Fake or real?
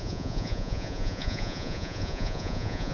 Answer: fake